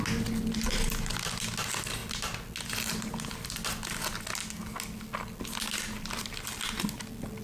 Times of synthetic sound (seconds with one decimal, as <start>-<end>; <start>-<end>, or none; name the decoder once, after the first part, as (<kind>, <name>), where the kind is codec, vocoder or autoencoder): none